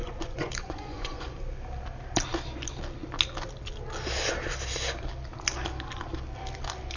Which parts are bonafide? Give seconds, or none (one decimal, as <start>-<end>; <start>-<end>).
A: 1.4-7.0